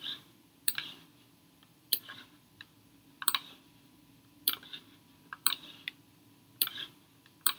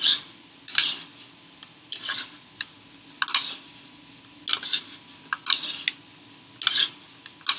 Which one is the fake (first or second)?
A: first